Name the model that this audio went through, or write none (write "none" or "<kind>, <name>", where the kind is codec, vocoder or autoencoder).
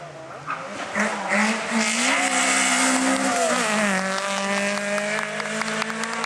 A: none